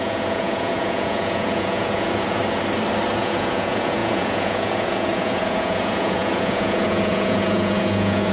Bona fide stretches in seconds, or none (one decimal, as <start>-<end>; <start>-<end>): 2.4-3.1